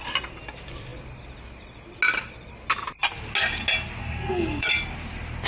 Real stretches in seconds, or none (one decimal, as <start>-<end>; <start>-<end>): 0.0-4.0; 4.7-5.5

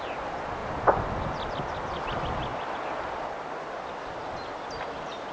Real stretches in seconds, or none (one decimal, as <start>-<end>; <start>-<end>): 0.0-5.3

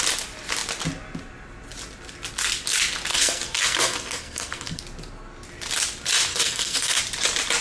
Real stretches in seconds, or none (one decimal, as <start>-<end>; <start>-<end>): 0.0-3.1; 4.8-6.3; 7.0-7.6

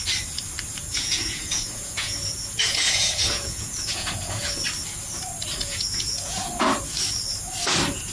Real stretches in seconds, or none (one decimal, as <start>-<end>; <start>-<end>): 0.0-0.8; 4.4-5.6; 6.5-8.1

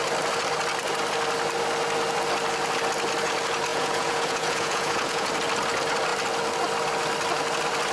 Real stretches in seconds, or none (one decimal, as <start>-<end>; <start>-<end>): 0.0-3.7; 5.3-7.9

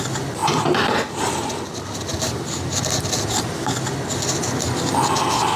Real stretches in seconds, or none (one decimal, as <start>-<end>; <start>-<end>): 0.0-0.4; 1.2-5.6

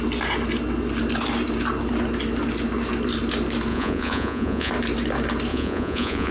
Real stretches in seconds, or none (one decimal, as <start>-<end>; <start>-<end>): 0.0-3.7; 4.7-5.5

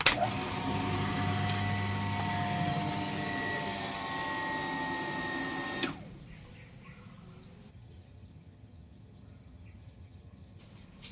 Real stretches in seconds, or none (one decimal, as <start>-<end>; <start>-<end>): 0.0-7.7; 10.6-11.1